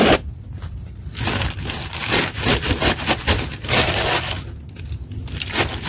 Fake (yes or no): no